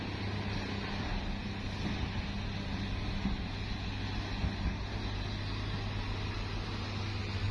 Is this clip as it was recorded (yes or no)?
yes